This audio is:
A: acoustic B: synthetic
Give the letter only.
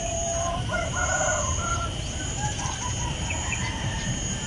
B